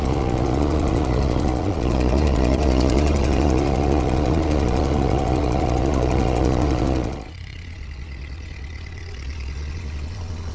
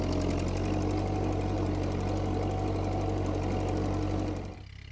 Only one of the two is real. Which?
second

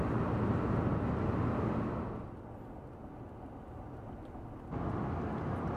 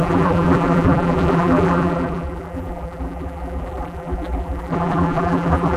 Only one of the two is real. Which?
first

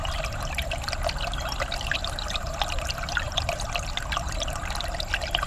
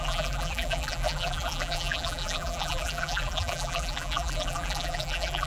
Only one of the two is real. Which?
first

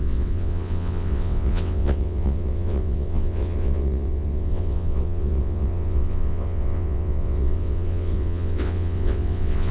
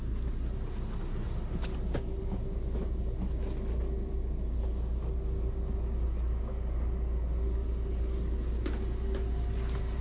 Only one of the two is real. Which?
second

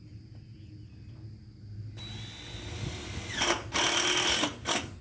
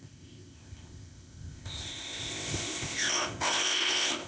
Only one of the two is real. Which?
first